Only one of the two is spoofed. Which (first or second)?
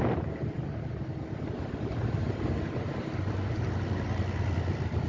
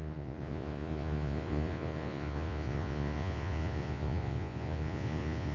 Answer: second